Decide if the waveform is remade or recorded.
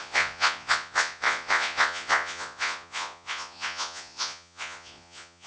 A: remade